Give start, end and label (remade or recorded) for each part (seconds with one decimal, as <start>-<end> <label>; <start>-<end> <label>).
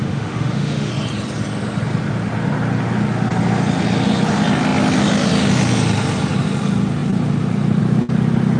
0.0-0.9 remade; 0.9-8.6 recorded